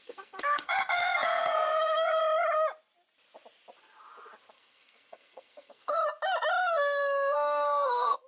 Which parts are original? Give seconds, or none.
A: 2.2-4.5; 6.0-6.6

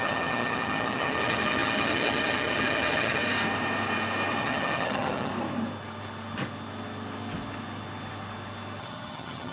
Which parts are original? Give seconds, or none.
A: 3.2-4.4; 5.3-8.8

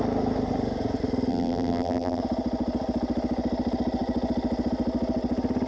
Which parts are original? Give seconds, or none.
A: 0.0-1.3; 2.2-5.7

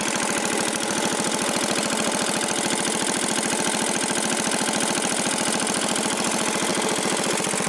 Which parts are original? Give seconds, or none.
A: 0.0-7.7

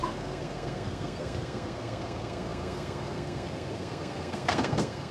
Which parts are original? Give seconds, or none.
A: none